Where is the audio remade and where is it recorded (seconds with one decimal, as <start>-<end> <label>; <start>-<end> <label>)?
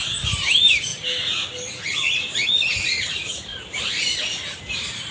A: 0.0-0.9 remade; 0.9-2.8 recorded; 2.8-3.5 remade; 3.5-5.1 recorded